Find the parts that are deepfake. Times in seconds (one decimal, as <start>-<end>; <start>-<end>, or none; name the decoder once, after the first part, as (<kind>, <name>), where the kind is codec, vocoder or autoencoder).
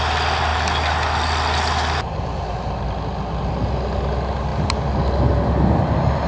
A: none